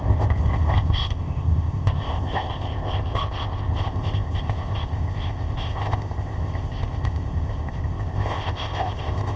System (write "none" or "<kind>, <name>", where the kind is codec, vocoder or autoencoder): codec, ZipCodec